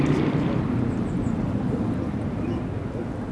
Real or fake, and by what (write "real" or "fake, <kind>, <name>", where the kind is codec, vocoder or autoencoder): real